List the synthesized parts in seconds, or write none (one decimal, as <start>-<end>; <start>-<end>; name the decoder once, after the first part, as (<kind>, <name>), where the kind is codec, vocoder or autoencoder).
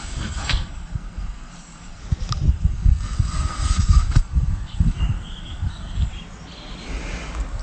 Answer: 0.0-2.0 (codec, SNAC); 2.5-6.1